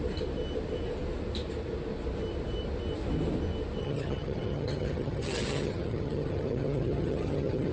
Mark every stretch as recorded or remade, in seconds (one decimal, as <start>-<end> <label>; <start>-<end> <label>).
0.0-3.8 recorded; 3.8-7.7 remade